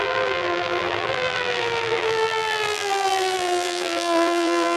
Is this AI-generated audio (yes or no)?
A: yes